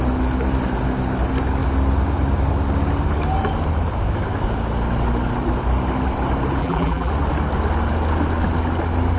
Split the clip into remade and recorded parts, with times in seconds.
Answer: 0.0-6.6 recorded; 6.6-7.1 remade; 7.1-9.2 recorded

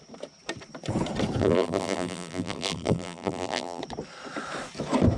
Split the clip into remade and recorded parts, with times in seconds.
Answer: 0.0-1.4 recorded; 1.4-3.8 remade; 3.8-5.2 recorded

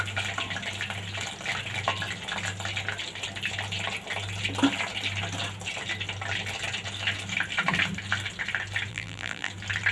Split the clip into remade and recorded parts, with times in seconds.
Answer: 0.0-8.9 recorded; 8.9-9.5 remade; 9.5-9.9 recorded

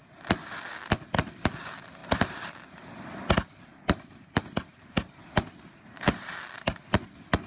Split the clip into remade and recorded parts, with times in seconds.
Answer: 0.0-2.0 recorded; 2.0-2.5 remade; 2.5-3.7 recorded; 3.7-6.3 remade; 6.3-7.5 recorded

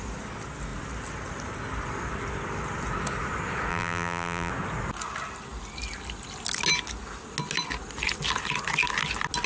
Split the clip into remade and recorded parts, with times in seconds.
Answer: 0.0-3.7 recorded; 3.7-4.5 remade; 4.5-9.5 recorded